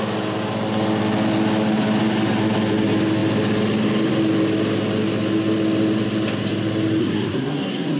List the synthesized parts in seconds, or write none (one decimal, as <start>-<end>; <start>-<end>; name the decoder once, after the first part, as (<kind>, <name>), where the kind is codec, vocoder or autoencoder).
7.0-8.0 (codec, SNAC)

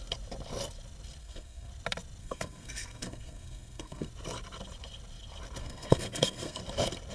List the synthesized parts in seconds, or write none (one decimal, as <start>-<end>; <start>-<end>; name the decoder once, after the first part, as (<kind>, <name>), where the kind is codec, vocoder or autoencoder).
1.2-1.7 (codec, SNAC); 2.2-4.1; 5.6-6.6